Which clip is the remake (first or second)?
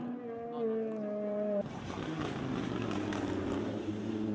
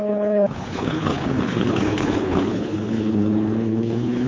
second